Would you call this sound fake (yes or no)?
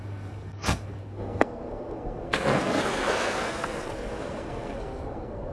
yes